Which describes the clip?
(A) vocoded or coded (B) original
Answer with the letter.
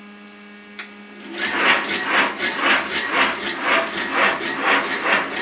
B